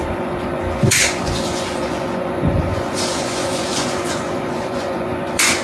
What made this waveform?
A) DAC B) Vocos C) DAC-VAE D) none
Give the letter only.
B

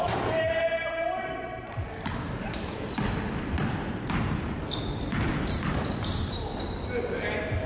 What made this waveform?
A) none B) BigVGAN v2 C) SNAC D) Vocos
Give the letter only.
B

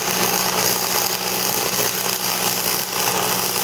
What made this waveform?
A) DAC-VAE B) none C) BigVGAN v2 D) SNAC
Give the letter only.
B